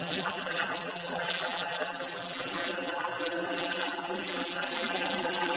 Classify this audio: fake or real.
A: fake